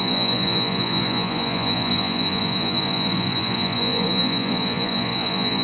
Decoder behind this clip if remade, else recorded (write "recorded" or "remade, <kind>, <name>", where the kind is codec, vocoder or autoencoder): remade, vocoder, Vocos